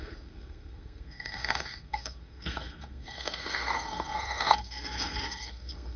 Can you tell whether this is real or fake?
fake